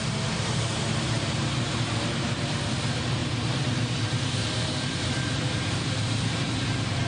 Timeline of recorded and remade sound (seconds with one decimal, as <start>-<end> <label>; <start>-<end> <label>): 0.0-7.1 remade